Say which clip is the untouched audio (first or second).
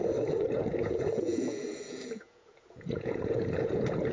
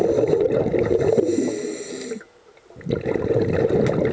second